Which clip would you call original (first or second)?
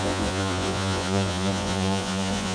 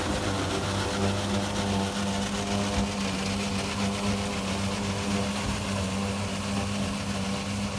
second